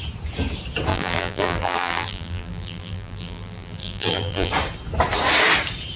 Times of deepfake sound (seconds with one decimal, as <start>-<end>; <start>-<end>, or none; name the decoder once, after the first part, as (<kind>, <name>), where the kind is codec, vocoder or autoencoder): 0.9-4.5 (vocoder, BigVGAN v2)